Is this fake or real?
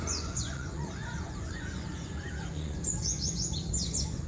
fake